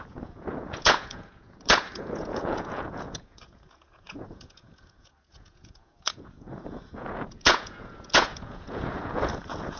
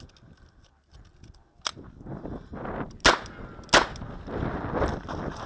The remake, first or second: first